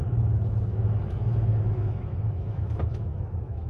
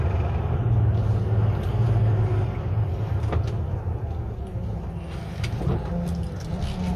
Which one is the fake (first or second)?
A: first